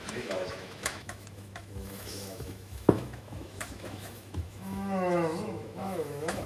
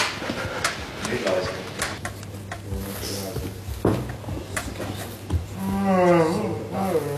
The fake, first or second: first